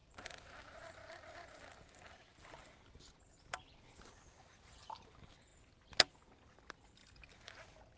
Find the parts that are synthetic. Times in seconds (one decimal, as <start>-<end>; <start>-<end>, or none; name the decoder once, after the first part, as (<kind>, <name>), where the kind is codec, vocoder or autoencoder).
none